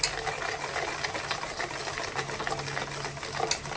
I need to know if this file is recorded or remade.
recorded